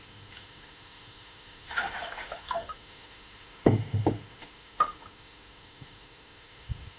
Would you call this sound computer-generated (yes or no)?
yes